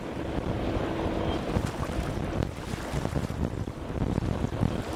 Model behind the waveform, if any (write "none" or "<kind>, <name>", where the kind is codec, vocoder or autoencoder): none